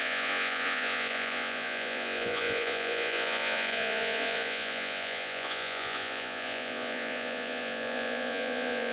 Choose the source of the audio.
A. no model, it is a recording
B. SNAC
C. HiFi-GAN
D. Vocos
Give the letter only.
D